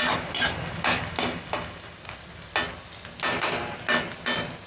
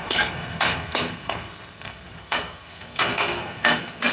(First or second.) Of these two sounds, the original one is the first